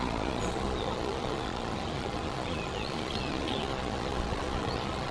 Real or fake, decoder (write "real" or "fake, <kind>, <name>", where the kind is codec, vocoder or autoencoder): fake, vocoder, Vocos